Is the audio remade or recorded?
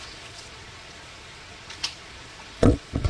remade